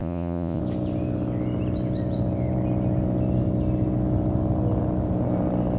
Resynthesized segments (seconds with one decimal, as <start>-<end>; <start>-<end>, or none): 0.0-0.6

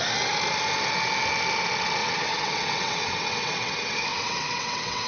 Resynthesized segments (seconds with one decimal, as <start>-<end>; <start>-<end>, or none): 2.0-5.1

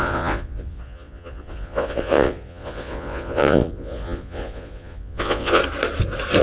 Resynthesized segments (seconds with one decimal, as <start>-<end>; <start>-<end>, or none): 0.0-5.6

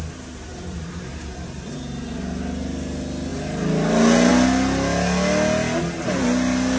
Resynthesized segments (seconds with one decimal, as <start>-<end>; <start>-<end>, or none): 0.5-1.8

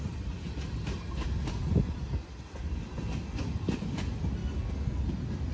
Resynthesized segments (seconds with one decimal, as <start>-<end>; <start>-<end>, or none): 4.4-5.0

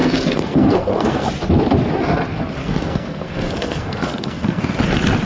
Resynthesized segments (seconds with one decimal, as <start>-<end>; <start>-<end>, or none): 0.0-1.3; 2.6-4.6

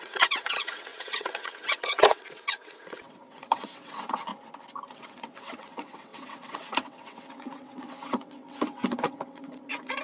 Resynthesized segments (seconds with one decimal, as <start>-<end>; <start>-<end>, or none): 0.0-4.3; 4.9-10.0